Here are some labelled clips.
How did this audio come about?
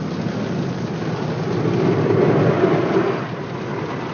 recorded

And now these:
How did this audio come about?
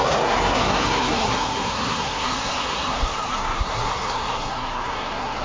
remade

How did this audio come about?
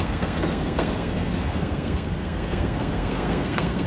remade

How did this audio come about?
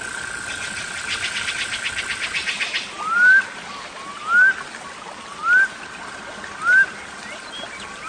recorded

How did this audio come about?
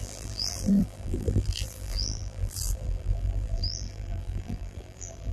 remade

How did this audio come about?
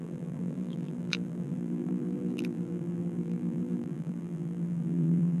remade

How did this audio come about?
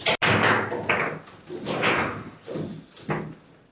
recorded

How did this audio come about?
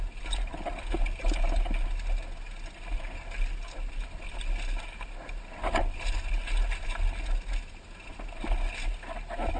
recorded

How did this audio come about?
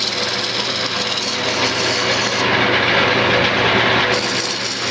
recorded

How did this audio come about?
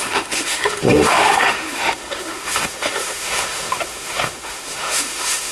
remade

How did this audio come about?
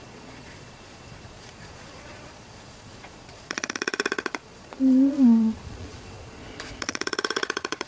remade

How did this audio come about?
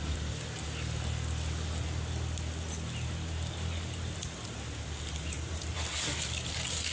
recorded